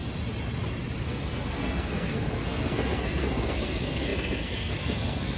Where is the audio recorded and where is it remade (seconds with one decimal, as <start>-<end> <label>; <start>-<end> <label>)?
0.0-1.0 recorded; 1.0-5.4 remade